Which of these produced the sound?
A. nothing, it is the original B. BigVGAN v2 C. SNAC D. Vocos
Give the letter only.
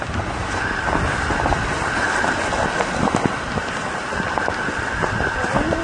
A